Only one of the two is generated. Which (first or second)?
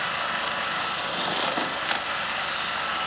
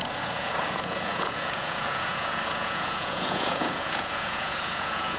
second